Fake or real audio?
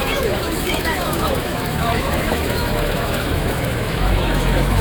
fake